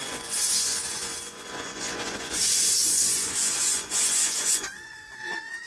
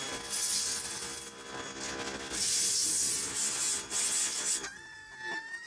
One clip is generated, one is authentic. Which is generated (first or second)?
first